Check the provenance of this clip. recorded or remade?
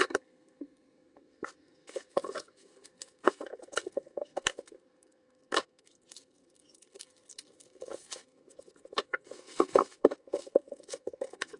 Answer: remade